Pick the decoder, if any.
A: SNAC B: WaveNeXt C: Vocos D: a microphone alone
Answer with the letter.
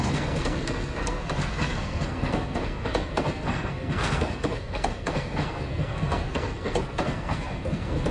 A